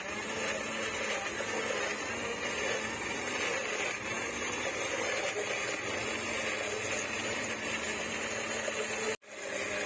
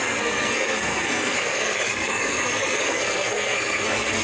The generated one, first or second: second